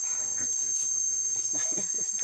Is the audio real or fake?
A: real